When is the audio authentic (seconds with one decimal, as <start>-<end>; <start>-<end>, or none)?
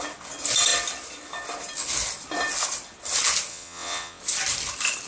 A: 0.0-3.5; 4.2-5.1